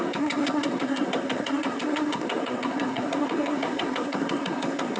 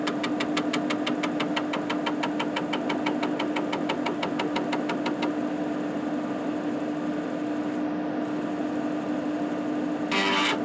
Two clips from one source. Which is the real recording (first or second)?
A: second